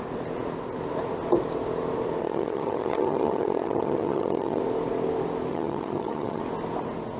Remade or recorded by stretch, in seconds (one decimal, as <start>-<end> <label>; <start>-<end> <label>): 0.0-2.2 recorded; 2.2-4.6 remade; 4.6-5.5 recorded; 5.5-6.4 remade; 6.4-7.2 recorded